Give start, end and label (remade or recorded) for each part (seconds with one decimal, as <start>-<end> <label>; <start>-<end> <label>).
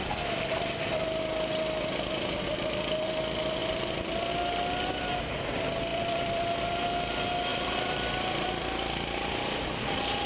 0.0-1.2 remade; 1.2-3.6 recorded; 3.6-4.3 remade; 4.3-5.9 recorded; 5.9-6.5 remade; 6.5-7.5 recorded; 7.5-8.5 remade; 8.5-10.3 recorded